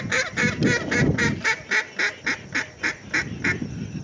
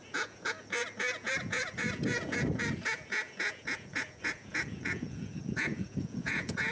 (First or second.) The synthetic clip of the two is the second